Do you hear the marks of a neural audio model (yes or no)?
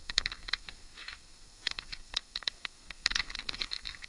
yes